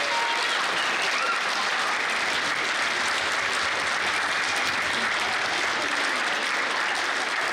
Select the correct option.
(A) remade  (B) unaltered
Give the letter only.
B